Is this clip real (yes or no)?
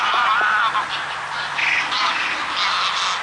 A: yes